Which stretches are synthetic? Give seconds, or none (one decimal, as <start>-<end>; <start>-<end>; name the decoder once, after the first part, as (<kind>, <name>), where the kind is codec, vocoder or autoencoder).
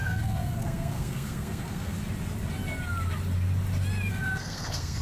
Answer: 0.0-2.0 (codec, SNAC); 4.1-5.0